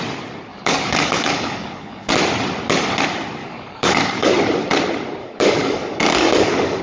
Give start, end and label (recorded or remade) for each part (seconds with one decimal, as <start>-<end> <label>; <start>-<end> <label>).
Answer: 0.0-0.5 recorded; 0.5-2.1 remade; 2.1-3.4 recorded; 3.4-4.3 remade; 4.3-5.2 recorded; 5.2-6.8 remade